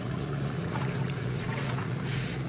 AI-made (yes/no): yes